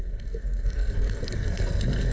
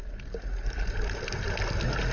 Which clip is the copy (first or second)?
first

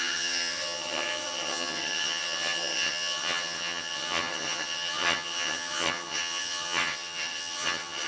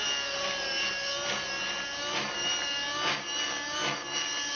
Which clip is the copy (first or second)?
first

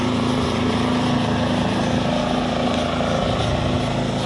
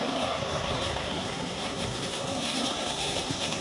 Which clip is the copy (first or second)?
second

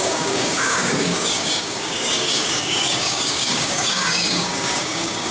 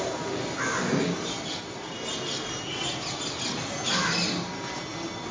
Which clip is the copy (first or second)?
first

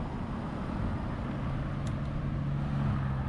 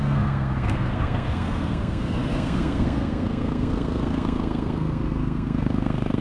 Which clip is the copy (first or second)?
second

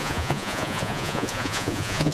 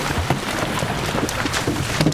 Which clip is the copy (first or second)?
first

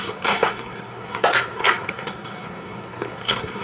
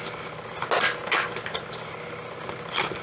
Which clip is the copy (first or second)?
first